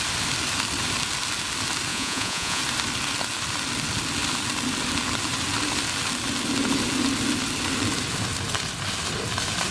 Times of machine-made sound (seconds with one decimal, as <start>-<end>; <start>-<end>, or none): 1.9-2.6